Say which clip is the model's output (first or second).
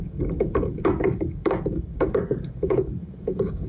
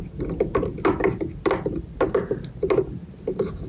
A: first